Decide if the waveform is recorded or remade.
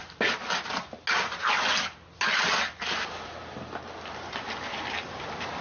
recorded